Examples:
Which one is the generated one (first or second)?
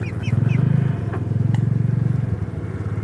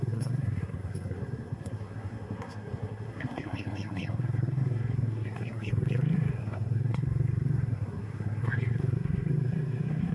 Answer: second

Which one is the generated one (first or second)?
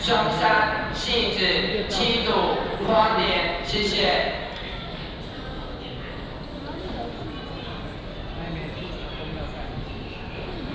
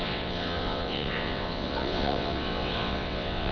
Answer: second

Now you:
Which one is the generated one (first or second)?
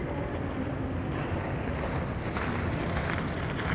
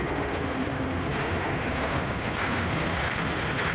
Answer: second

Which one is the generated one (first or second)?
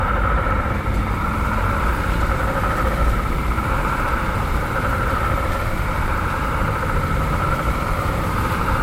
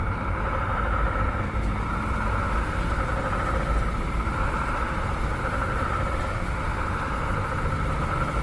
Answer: first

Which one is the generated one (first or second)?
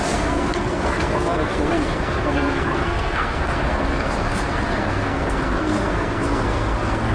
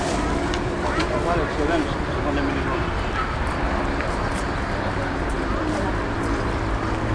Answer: first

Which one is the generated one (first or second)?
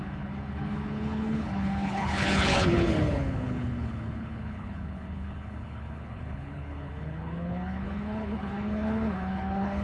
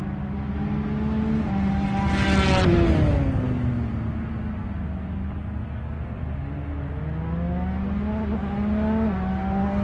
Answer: first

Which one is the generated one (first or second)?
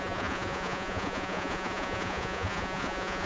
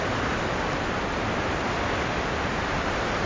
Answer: first